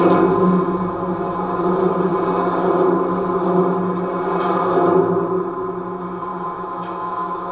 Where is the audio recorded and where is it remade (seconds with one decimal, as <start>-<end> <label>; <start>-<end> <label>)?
0.0-6.3 recorded; 6.3-7.5 remade